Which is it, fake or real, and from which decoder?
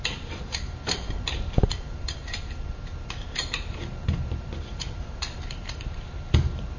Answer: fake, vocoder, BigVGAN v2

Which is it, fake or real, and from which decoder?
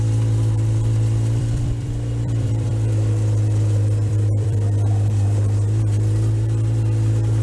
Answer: fake, vocoder, BigVGAN v2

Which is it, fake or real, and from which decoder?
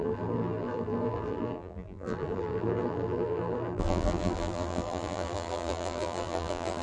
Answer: fake, vocoder, BigVGAN v2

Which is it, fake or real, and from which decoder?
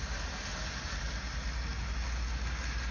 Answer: real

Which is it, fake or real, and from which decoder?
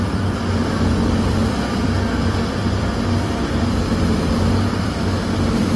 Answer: fake, vocoder, BigVGAN v2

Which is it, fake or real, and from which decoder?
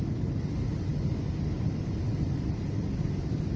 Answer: real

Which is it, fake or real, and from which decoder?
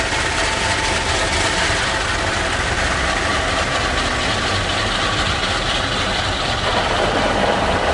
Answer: real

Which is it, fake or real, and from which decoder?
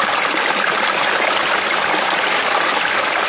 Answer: fake, vocoder, BigVGAN v2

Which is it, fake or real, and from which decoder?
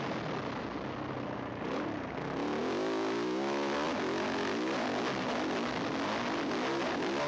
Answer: real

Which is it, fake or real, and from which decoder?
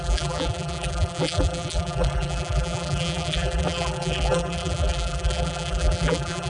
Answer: fake, vocoder, BigVGAN v2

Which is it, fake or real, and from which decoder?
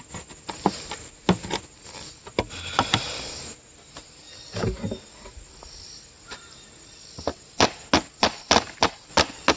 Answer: real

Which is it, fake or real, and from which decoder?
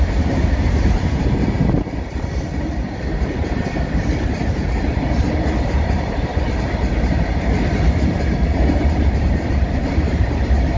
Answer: fake, vocoder, BigVGAN v2